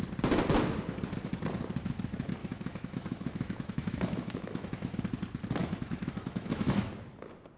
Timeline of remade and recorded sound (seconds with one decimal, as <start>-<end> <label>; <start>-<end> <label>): 0.0-2.4 recorded; 2.4-5.0 remade; 5.0-5.6 recorded; 5.6-6.9 remade; 6.9-7.6 recorded